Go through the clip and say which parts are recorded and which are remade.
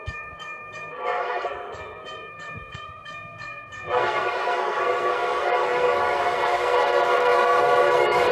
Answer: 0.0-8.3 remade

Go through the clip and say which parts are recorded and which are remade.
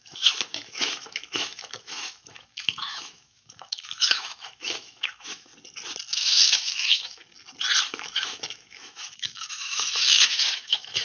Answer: 0.0-5.5 remade; 5.5-6.1 recorded; 6.1-7.2 remade; 7.2-7.9 recorded; 7.9-11.0 remade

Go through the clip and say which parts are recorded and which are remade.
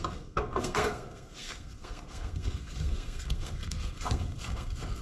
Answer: 0.0-5.0 remade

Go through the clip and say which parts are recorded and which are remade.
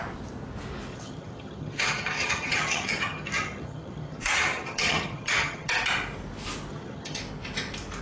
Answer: 0.0-0.9 recorded; 0.9-5.7 remade; 5.7-6.7 recorded; 6.7-7.2 remade; 7.2-8.0 recorded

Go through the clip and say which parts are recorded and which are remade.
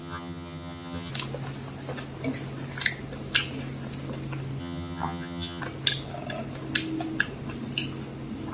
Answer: 0.0-1.1 remade; 1.1-4.6 recorded; 4.6-5.6 remade; 5.6-8.5 recorded